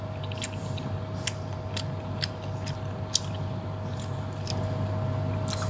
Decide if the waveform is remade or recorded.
recorded